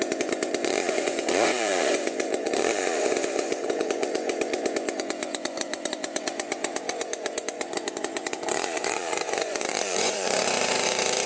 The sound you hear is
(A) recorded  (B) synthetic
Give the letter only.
B